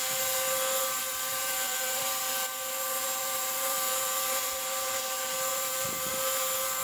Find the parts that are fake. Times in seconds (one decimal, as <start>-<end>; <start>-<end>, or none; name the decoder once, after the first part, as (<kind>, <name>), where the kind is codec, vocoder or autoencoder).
1.0-2.2 (vocoder, BigVGAN v2); 3.2-5.0; 5.5-6.1